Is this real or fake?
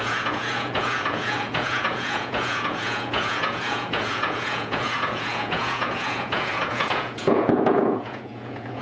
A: fake